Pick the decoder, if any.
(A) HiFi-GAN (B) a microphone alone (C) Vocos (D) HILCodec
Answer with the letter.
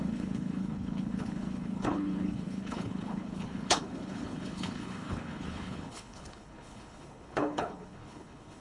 D